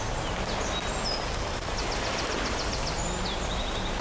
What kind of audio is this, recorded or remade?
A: recorded